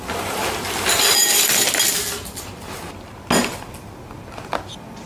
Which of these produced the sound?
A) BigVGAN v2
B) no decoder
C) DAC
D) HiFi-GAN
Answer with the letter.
B